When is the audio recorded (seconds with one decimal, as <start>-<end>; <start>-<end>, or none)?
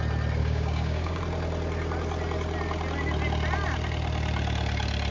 0.0-0.4; 1.2-5.1